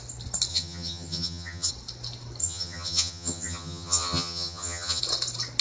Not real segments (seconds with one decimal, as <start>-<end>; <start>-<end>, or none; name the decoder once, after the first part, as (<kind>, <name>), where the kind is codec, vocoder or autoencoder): 0.5-1.7 (vocoder, HiFi-GAN); 2.4-5.0